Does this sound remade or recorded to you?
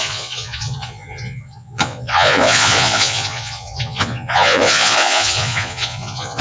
remade